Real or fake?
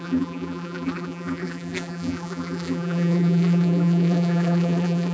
fake